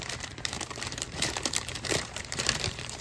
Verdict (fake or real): fake